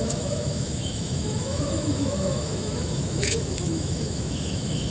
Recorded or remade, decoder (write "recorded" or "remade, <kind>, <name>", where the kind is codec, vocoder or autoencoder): remade, autoencoder, DAC-VAE